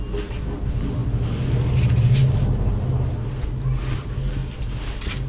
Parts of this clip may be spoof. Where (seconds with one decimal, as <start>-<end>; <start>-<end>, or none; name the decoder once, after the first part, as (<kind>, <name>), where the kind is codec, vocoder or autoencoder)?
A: none